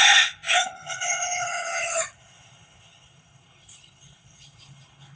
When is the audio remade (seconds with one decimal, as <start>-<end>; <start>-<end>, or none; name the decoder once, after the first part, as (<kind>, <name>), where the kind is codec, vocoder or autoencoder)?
0.0-5.2 (codec, HILCodec)

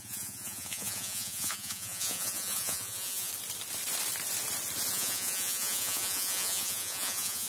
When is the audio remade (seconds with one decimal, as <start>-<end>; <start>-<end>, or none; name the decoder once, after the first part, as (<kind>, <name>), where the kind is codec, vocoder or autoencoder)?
0.0-3.3 (vocoder, Vocos); 4.9-7.5

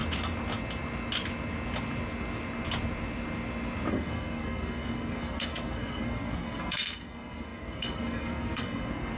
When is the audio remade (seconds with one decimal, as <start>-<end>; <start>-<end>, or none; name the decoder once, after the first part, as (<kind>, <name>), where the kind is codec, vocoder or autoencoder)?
3.9-9.2 (codec, SNAC)

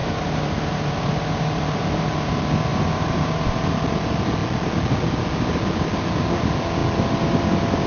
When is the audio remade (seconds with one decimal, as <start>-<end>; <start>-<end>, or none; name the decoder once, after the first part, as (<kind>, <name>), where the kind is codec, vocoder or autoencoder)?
0.0-2.3 (vocoder, BigVGAN v2); 2.7-3.7

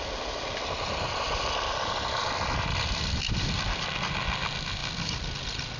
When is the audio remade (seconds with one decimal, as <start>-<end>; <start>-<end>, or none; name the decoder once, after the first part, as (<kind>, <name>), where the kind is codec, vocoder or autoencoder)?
none